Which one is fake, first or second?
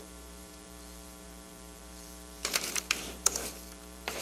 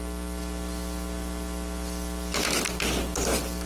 first